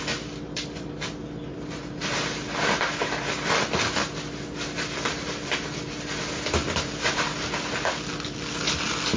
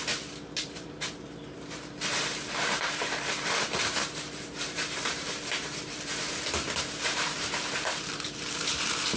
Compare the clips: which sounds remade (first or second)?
second